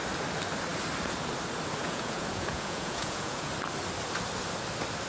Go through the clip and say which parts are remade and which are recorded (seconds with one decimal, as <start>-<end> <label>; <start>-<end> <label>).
0.0-1.8 recorded; 1.8-3.5 remade; 3.5-5.1 recorded